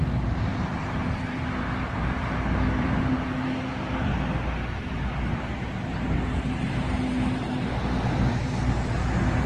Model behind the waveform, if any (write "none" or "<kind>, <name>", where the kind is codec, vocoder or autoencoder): vocoder, BigVGAN v2